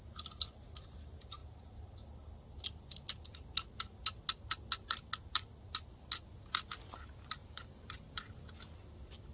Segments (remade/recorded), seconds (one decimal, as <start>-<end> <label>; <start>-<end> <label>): 0.0-7.4 recorded; 7.4-8.3 remade; 8.3-9.3 recorded